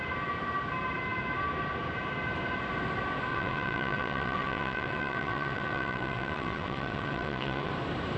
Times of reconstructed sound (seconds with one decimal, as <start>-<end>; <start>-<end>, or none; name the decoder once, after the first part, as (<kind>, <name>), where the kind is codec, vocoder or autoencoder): 3.3-7.7 (vocoder, WaveNeXt)

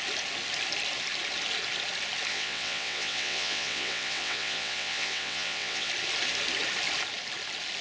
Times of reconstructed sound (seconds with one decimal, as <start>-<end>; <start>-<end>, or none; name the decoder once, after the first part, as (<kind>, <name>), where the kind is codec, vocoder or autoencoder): 2.3-5.9 (vocoder, WaveNeXt)

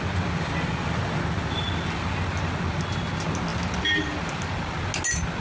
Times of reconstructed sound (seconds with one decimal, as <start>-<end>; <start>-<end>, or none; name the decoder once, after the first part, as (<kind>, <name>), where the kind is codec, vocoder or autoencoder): none